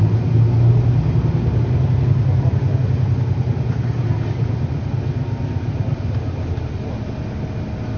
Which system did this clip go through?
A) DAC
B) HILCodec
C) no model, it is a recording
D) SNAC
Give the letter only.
C